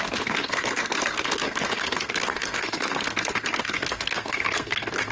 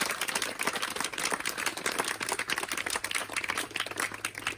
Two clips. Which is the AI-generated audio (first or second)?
first